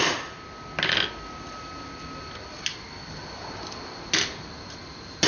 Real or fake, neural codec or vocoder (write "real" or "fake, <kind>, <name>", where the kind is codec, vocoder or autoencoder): real